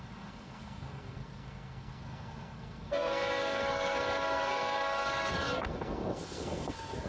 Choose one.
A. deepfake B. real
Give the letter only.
A